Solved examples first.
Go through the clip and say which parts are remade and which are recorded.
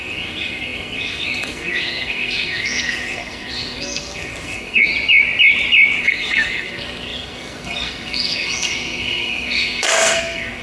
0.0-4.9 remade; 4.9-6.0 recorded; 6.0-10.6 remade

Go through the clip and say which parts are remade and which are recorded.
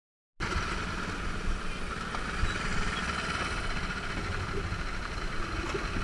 0.0-6.0 recorded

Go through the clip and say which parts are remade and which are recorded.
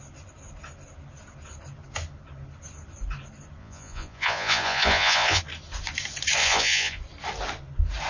0.0-3.6 recorded; 3.6-5.4 remade; 5.4-6.4 recorded; 6.4-7.0 remade; 7.0-8.1 recorded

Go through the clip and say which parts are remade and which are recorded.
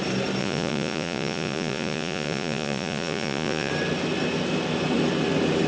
0.0-0.4 recorded; 0.4-3.7 remade; 3.7-5.7 recorded